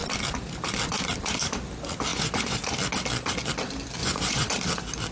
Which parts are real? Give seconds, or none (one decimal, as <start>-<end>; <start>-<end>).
0.0-2.1; 2.7-4.0; 4.5-5.1